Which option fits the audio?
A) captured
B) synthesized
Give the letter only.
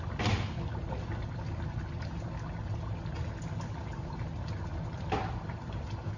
A